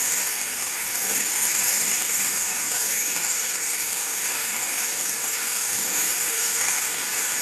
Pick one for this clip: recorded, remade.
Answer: remade